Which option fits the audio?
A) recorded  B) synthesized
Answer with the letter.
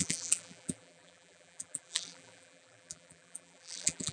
B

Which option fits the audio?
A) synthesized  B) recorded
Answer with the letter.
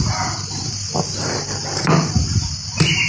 B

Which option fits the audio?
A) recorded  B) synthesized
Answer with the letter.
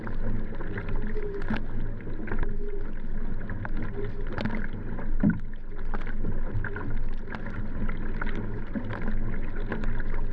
A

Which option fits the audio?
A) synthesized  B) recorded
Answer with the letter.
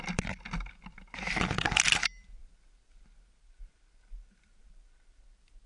A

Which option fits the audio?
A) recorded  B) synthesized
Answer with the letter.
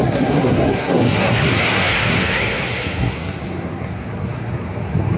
B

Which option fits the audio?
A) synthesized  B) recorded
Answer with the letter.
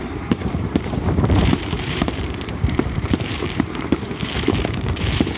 A